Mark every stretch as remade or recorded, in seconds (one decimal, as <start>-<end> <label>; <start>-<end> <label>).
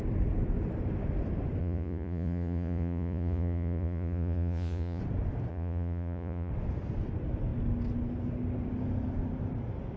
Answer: 0.0-1.6 recorded; 1.6-5.0 remade; 5.0-5.5 recorded; 5.5-6.5 remade; 6.5-10.0 recorded